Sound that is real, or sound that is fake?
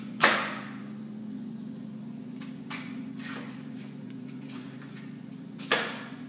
fake